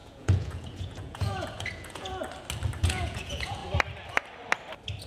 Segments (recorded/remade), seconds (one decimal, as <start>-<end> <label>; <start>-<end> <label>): 0.0-2.2 remade; 2.2-2.8 recorded; 2.8-3.6 remade; 3.6-5.1 recorded